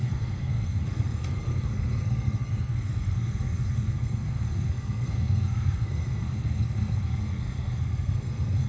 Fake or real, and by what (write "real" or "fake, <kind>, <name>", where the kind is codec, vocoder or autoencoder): fake, codec, SNAC